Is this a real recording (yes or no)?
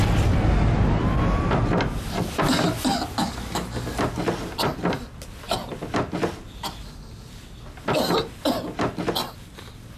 yes